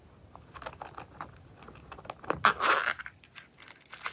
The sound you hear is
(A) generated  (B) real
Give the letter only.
B